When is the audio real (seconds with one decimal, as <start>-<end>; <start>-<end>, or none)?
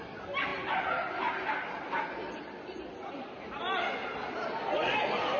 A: 0.0-5.4